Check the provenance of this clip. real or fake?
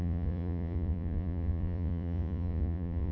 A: fake